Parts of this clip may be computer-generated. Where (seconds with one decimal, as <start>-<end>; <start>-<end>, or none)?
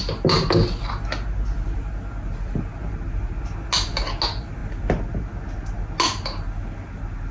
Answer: none